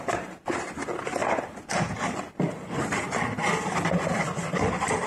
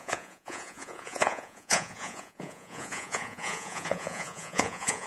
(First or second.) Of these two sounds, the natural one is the first